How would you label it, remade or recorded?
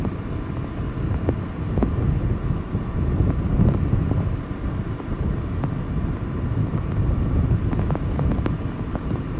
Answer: recorded